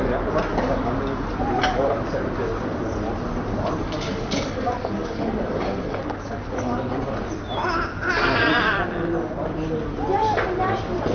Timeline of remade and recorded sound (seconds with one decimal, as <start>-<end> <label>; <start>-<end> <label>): 0.0-0.5 recorded; 0.5-1.3 remade; 1.3-3.8 recorded; 3.8-6.9 remade; 6.9-11.1 recorded

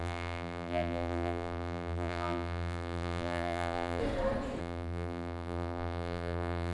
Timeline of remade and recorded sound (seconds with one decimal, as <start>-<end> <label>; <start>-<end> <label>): 0.0-4.0 remade; 4.0-4.6 recorded; 4.6-6.7 remade

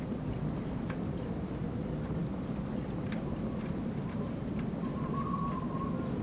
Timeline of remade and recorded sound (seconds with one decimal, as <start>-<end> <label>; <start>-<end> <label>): 0.0-3.8 recorded; 3.8-4.7 remade; 4.7-6.2 recorded

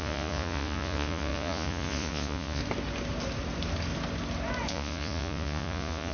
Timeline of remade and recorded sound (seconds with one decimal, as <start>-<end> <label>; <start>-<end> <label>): 0.0-2.6 remade; 2.6-4.7 recorded; 4.7-6.1 remade

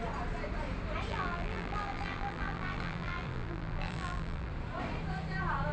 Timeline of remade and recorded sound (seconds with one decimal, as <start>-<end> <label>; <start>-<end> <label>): 0.0-1.1 recorded; 1.1-4.5 remade; 4.5-5.7 recorded

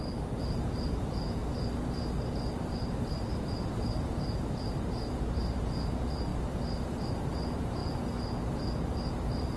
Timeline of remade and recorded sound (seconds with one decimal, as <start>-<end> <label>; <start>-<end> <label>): 0.0-1.4 remade; 1.4-2.5 recorded; 2.5-3.3 remade; 3.3-4.4 recorded; 4.4-6.3 remade; 6.3-7.1 recorded; 7.1-7.8 remade; 7.8-9.1 recorded; 9.1-9.6 remade

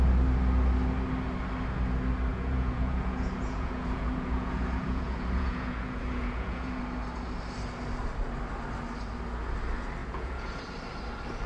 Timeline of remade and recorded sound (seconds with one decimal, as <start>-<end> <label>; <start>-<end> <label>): 0.0-2.3 recorded; 2.3-6.8 remade; 6.8-10.0 recorded; 10.0-10.6 remade; 10.6-11.5 recorded